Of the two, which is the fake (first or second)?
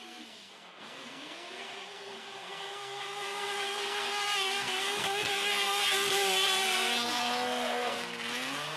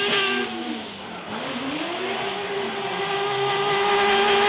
first